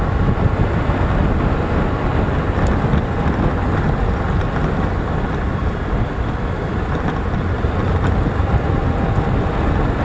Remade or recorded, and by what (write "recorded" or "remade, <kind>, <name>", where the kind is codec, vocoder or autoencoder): recorded